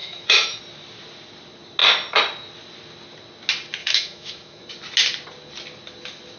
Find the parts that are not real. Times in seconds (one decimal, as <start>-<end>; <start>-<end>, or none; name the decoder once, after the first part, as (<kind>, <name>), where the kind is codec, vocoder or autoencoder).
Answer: 0.0-0.6 (autoencoder, DAC-VAE); 3.8-4.6